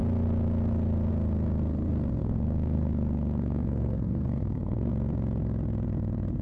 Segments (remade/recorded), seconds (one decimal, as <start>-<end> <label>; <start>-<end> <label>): 0.0-2.2 recorded; 2.2-4.9 remade; 4.9-6.4 recorded